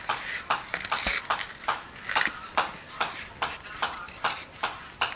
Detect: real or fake real